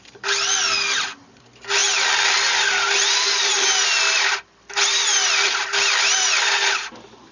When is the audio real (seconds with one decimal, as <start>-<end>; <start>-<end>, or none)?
0.0-7.3